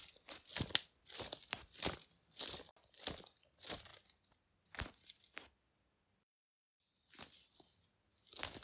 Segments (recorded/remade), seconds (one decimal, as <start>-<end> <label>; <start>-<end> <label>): 0.0-2.7 remade; 2.7-8.6 recorded